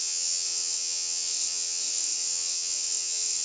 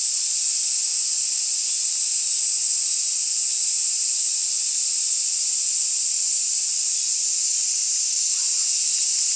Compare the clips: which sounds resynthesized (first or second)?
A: first